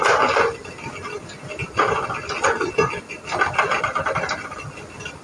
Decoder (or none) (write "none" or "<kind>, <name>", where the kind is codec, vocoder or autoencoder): none